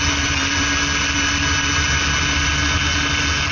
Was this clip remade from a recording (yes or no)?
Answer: no